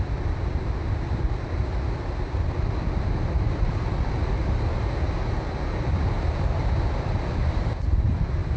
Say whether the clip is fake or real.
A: real